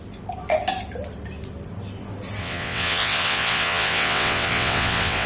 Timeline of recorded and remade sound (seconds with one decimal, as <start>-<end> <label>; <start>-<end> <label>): 0.0-2.4 recorded; 2.4-5.3 remade